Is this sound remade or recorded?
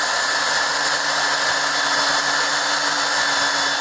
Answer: recorded